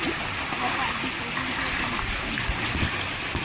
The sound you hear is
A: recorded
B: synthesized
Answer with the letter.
A